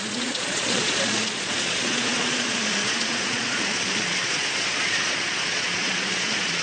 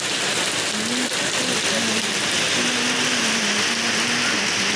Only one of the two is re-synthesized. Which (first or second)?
first